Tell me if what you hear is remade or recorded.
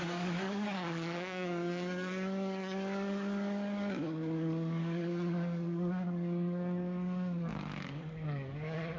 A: remade